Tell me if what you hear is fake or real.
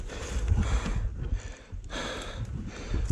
real